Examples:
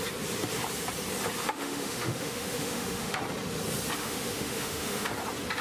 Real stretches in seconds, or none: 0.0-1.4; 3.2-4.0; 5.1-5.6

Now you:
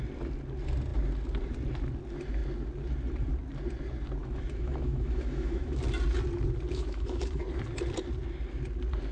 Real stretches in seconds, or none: 0.0-4.2; 5.8-6.7; 7.4-9.1

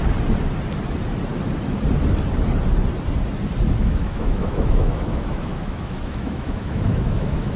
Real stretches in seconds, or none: 0.0-3.8

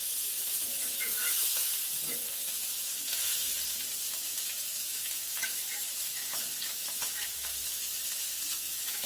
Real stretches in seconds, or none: 1.7-2.3; 3.5-4.1

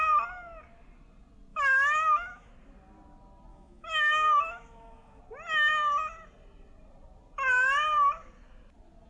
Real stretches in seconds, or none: 0.0-1.5; 2.5-3.5; 5.2-9.1

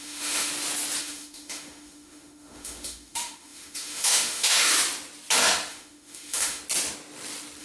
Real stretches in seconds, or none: 0.5-1.0; 4.7-5.7; 6.6-7.6

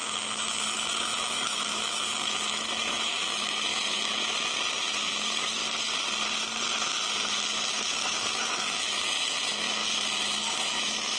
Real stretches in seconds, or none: 4.1-4.7; 5.6-7.7; 9.8-10.5